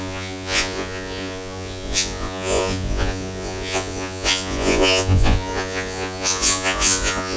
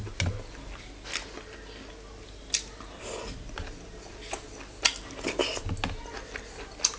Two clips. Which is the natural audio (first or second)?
second